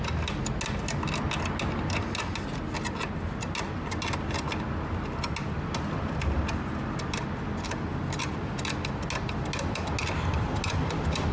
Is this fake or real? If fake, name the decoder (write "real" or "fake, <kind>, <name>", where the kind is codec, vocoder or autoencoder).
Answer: real